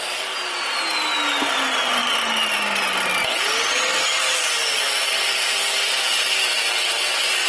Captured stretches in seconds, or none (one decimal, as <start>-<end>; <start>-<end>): 0.0-7.5